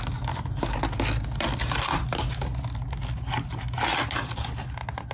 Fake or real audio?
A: real